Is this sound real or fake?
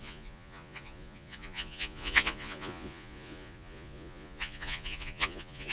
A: fake